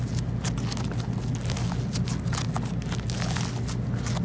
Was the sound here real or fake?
real